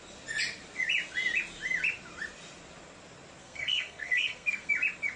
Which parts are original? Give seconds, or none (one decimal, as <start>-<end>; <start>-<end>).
0.0-3.4; 4.7-5.2